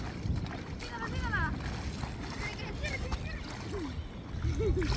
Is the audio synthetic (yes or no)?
no